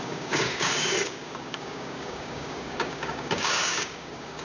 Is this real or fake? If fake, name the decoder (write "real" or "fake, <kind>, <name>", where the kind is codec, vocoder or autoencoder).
fake, codec, DAC